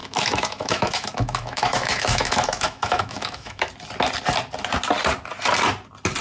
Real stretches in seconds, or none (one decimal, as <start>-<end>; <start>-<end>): 3.7-6.2